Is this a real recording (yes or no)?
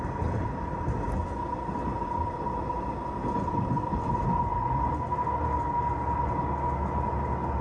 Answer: yes